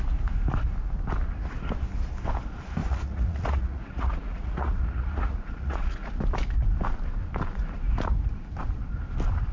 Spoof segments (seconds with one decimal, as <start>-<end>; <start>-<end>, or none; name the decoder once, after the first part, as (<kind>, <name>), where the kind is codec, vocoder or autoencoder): 2.8-6.1 (vocoder, Vocos)

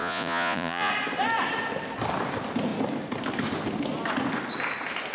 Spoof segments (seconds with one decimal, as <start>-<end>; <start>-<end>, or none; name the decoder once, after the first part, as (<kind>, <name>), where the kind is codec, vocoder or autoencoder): 0.0-0.9 (vocoder, Vocos)

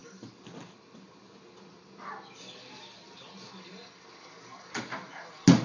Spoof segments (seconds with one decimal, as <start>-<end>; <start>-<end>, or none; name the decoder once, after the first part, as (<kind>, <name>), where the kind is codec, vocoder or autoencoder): none

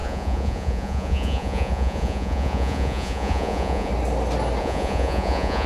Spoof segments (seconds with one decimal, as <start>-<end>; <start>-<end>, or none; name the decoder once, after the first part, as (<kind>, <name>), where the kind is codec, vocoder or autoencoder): 0.0-3.9 (vocoder, Vocos); 4.6-5.7

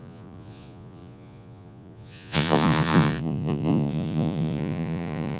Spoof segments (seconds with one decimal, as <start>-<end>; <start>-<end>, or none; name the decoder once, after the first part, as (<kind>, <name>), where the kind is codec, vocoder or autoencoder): 0.0-5.4 (vocoder, Vocos)

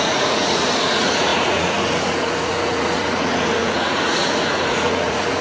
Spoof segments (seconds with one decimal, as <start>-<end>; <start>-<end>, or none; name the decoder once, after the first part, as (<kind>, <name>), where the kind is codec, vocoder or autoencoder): 0.0-5.4 (vocoder, Vocos)

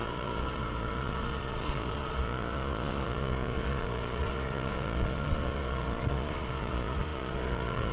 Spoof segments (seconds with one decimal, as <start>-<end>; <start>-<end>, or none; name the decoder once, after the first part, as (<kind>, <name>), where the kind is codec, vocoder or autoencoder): 0.0-7.9 (vocoder, Vocos)

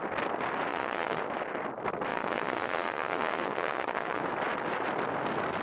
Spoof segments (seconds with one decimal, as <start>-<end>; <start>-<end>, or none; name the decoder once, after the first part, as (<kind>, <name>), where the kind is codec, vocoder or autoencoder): 0.7-1.2 (vocoder, Vocos); 2.1-4.2